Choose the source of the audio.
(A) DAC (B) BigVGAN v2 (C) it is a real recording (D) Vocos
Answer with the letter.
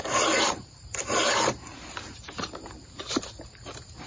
B